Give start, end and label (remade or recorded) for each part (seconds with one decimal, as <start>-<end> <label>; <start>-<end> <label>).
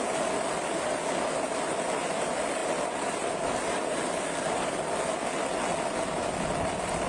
0.0-7.1 recorded